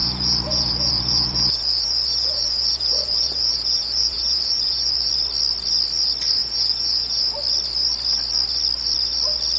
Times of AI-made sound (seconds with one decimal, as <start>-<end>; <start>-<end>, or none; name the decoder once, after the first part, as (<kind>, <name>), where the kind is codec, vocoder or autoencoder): 0.0-5.1 (vocoder, Vocos); 6.4-7.2